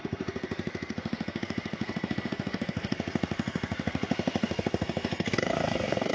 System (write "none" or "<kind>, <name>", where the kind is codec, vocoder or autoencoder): codec, SNAC